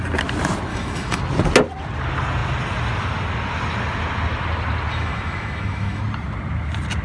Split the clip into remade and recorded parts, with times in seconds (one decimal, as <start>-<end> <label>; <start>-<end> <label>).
0.0-0.7 recorded; 0.7-1.2 remade; 1.2-4.9 recorded; 4.9-6.0 remade; 6.0-7.0 recorded